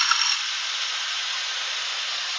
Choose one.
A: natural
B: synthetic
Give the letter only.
B